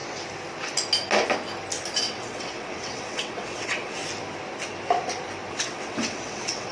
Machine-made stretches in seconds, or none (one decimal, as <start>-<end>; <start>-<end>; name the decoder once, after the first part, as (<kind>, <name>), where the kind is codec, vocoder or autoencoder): 2.0-4.0 (vocoder, WaveNeXt); 5.5-6.7